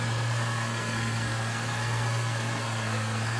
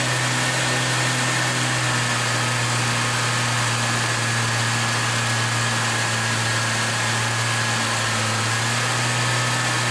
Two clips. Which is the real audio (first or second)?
second